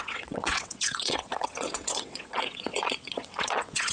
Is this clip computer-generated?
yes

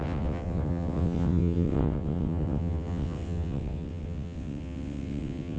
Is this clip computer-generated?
yes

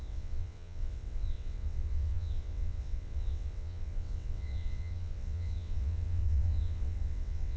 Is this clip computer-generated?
yes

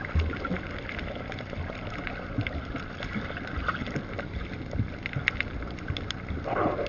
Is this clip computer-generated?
no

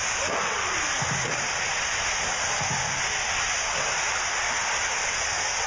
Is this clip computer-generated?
no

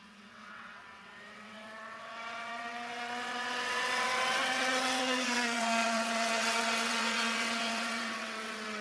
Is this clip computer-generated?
yes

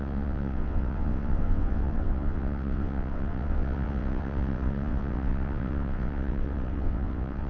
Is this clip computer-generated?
yes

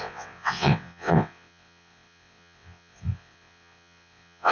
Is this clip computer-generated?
yes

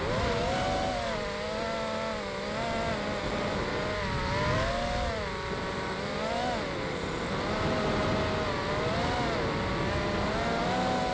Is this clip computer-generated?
no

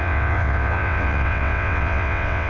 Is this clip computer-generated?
yes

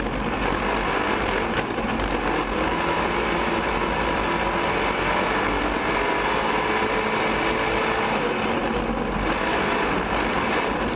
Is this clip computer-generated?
no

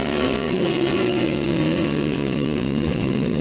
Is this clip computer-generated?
yes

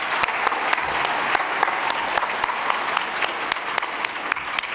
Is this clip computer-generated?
no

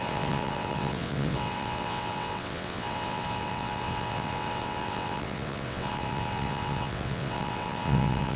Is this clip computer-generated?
yes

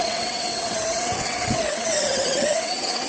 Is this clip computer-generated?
yes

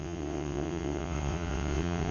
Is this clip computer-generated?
yes